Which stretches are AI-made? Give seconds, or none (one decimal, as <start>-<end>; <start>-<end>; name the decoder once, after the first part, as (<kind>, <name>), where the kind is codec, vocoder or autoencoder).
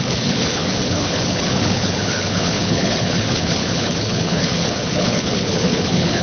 0.0-6.2 (codec, HILCodec)